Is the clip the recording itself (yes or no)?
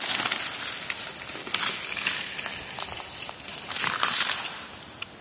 yes